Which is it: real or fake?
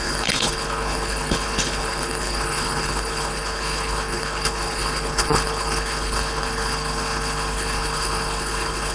fake